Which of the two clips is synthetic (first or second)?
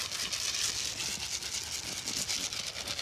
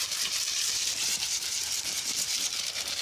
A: second